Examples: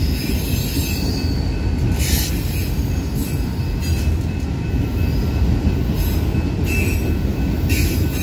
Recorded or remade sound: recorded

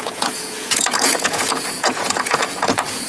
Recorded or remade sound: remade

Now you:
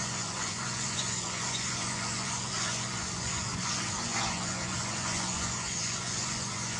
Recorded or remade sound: remade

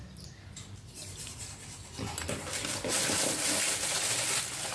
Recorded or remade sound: recorded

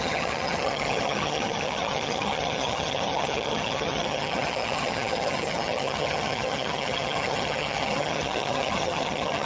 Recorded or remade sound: remade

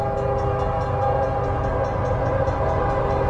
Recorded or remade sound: recorded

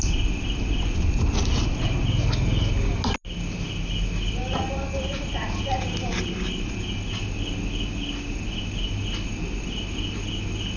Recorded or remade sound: recorded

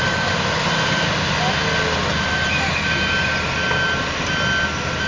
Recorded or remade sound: recorded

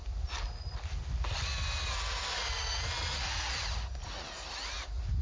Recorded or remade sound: recorded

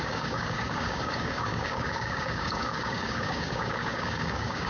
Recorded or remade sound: remade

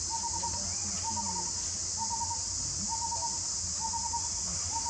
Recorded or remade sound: recorded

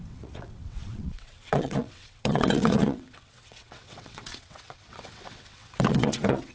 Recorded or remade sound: remade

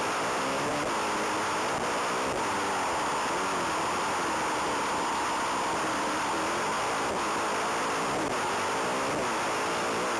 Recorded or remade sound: recorded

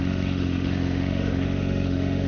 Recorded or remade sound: remade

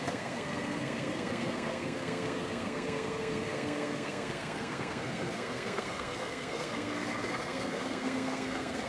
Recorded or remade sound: remade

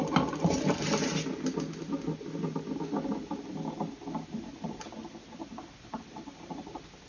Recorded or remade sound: recorded